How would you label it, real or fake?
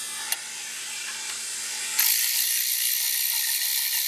real